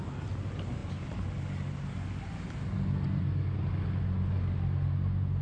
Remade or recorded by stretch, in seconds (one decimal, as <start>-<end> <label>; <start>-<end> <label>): 0.0-5.4 recorded